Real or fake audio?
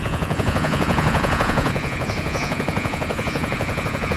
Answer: fake